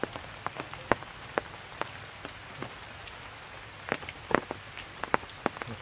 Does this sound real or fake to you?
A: fake